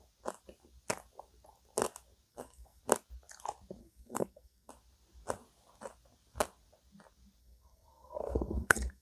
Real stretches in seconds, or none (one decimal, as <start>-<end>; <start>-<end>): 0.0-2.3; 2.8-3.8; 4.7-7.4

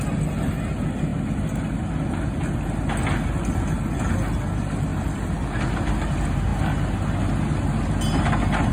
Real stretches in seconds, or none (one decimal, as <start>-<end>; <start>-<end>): 0.0-8.7

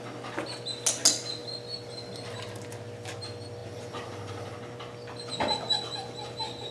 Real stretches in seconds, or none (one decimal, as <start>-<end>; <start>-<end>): 0.0-6.7

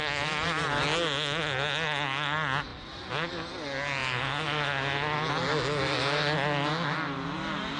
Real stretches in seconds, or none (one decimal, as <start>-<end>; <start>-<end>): 0.0-7.8